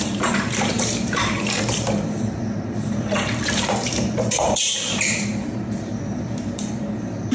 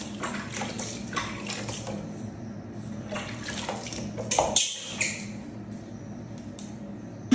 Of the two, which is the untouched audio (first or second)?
second